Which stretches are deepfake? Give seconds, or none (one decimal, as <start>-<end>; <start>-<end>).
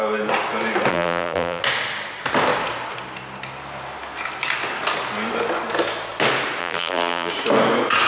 0.9-1.6; 6.6-7.3